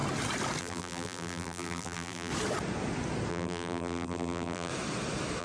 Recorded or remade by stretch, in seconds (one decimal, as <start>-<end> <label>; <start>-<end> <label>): 0.0-0.6 recorded; 0.6-2.3 remade; 2.3-3.3 recorded; 3.3-4.7 remade; 4.7-5.4 recorded